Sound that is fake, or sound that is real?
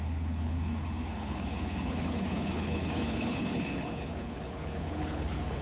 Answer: fake